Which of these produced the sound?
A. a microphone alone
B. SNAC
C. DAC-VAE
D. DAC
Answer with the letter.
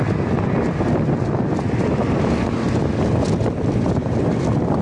A